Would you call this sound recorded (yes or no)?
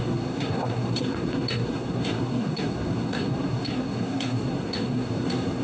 no